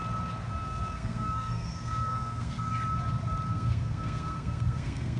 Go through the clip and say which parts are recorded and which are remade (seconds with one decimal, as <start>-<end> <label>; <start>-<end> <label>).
0.0-0.6 recorded; 0.6-2.7 remade; 2.7-3.5 recorded; 3.5-5.2 remade